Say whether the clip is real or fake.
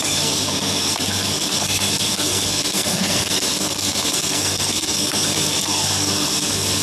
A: fake